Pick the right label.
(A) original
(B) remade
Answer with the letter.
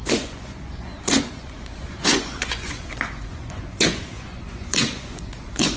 B